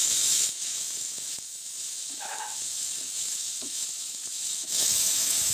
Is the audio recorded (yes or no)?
no